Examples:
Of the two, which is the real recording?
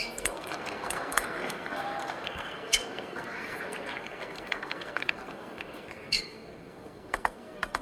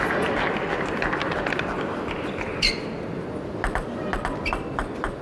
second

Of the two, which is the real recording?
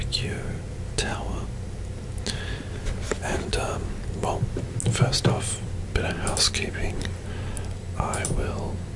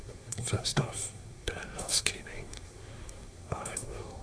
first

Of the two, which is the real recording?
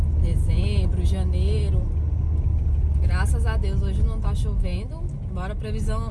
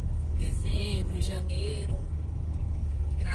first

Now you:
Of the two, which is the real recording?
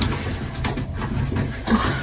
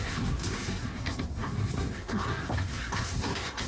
first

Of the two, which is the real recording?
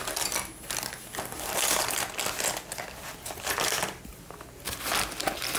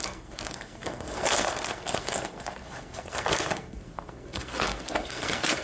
first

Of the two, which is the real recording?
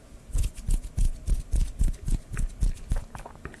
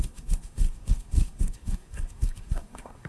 first